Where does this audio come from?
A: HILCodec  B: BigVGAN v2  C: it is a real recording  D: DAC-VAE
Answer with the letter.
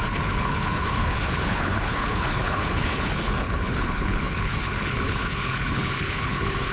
A